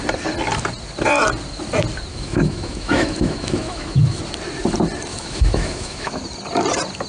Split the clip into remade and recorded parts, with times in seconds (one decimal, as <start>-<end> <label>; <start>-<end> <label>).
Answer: 0.0-2.1 recorded; 2.1-4.2 remade; 4.2-5.1 recorded; 5.1-6.2 remade; 6.2-7.1 recorded